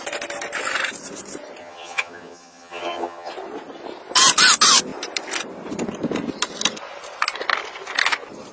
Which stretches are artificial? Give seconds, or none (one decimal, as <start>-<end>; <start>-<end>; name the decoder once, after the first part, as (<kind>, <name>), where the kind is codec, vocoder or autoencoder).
1.6-3.3 (vocoder, HiFi-GAN)